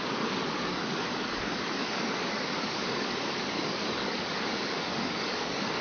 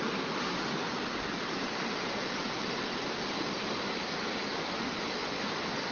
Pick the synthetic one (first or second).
first